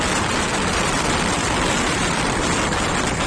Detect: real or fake real